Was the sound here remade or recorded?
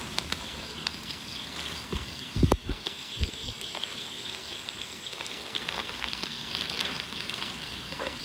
remade